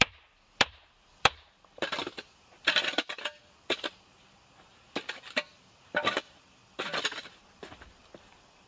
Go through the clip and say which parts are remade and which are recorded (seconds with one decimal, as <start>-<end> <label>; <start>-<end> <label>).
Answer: 0.0-3.4 remade; 3.4-5.5 recorded; 5.5-8.7 remade